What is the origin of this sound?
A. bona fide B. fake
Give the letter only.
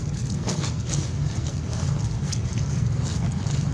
B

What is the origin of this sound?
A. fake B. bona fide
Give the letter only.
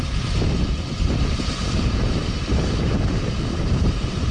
A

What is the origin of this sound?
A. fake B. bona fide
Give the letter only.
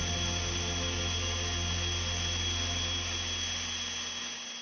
B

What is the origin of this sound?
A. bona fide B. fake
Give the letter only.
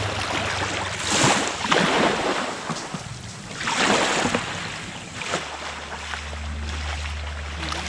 A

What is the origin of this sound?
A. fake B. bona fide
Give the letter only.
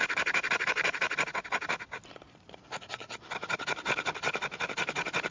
B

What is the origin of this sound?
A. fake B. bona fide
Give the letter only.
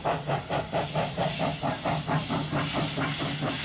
B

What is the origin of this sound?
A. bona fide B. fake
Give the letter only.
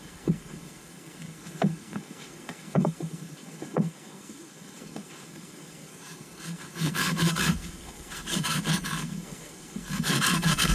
B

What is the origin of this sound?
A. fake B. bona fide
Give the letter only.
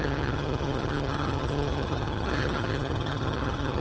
A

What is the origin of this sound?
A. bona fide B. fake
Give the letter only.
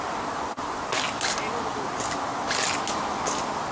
A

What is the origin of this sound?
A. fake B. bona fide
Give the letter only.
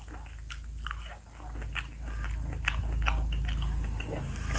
B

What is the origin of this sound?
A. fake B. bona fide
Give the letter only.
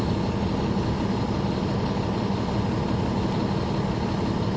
B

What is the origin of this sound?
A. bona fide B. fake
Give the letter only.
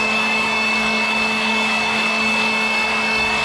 B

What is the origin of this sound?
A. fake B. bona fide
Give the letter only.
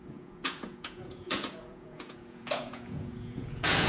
A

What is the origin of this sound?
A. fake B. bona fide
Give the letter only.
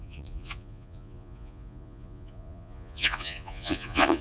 A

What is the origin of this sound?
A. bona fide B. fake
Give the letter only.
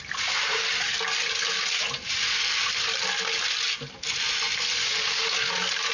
A